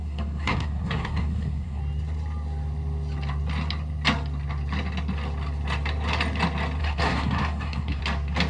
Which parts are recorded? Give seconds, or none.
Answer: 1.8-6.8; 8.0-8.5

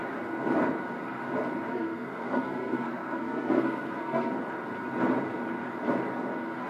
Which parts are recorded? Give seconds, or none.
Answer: 0.0-1.7; 4.3-6.7

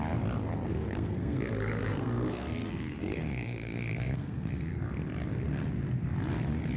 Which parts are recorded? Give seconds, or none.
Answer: 0.0-0.7; 4.8-6.8

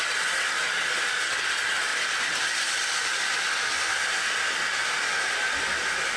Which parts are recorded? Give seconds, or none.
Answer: 0.0-6.2

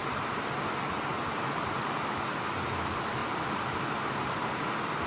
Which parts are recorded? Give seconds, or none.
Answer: 0.0-5.1

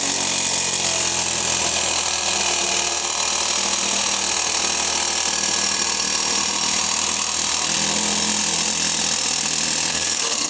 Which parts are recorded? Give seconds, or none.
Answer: 0.0-9.9

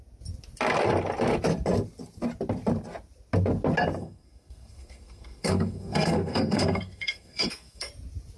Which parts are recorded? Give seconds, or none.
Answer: 0.0-4.0; 7.9-8.4